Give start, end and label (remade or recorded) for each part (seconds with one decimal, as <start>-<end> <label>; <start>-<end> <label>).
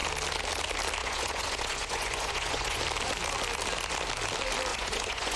0.0-1.0 recorded; 1.0-2.8 remade; 2.8-4.7 recorded; 4.7-5.4 remade